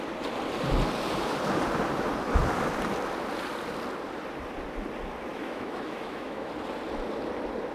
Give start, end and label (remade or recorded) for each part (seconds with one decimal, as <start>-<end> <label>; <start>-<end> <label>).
0.0-5.3 recorded; 5.3-6.5 remade; 6.5-7.7 recorded